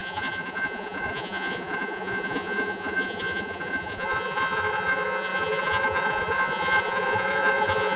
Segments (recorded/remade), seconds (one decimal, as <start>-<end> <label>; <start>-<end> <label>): 0.0-8.0 remade